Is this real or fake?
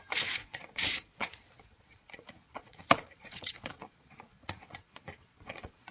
fake